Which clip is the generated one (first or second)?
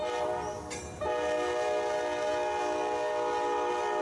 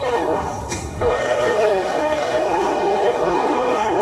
second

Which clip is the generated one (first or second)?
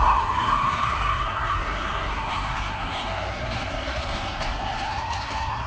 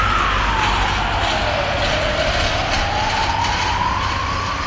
first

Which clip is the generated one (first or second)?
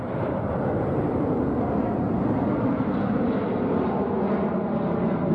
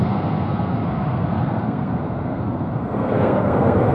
second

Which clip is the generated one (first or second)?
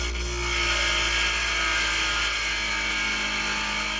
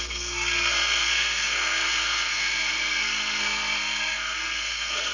second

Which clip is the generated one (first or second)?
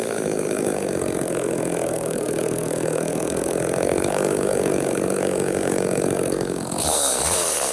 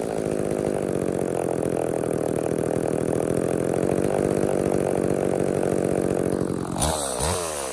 first